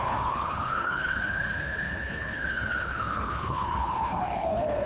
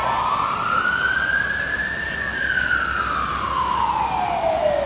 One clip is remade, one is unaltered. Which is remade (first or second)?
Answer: first